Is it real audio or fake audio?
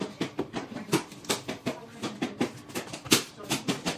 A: real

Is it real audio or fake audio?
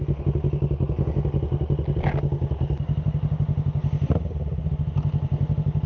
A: real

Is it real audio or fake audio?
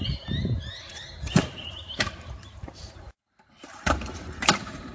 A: fake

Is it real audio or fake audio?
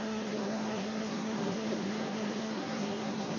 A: fake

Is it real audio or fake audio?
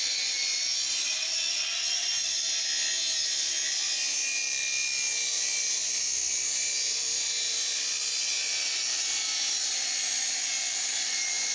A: real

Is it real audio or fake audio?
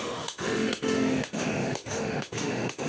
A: fake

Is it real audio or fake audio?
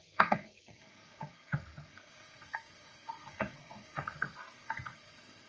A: fake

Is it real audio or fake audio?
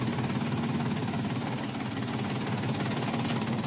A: real